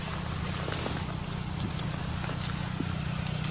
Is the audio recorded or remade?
recorded